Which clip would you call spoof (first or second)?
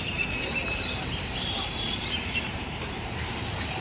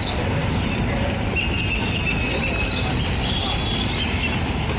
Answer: first